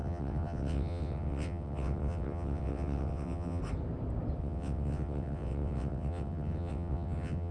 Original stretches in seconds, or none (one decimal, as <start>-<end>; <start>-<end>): 3.6-4.4